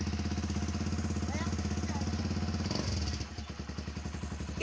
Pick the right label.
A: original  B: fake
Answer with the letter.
A